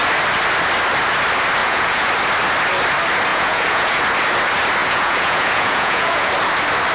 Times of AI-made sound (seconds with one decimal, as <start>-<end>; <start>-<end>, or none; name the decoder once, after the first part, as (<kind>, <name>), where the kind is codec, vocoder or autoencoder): 1.6-2.1 (vocoder, Vocos); 3.3-4.0; 4.8-6.3

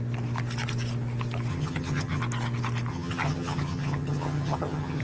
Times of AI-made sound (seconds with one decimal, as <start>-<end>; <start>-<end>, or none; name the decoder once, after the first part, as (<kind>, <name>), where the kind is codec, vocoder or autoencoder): 1.5-2.2 (vocoder, HiFi-GAN); 2.9-5.0